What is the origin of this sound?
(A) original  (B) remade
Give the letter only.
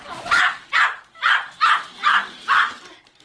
B